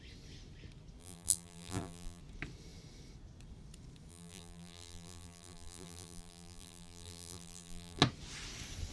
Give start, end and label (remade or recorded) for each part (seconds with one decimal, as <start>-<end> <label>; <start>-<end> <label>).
0.0-1.0 recorded; 1.0-2.2 remade; 2.2-4.1 recorded; 4.1-8.0 remade; 8.0-8.9 recorded